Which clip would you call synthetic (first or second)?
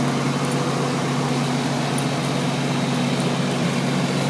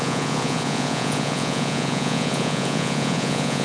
second